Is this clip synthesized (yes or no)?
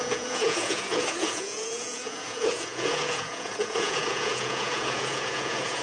yes